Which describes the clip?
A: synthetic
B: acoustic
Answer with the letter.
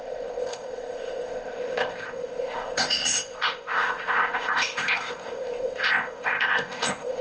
A